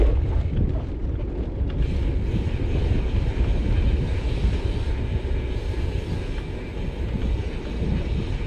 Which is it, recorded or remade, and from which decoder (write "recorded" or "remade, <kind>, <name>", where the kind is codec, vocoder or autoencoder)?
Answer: recorded